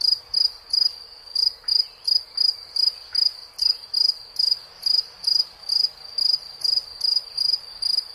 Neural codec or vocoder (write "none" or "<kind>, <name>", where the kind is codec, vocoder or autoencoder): none